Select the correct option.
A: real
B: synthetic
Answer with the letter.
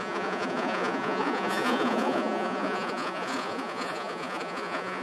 B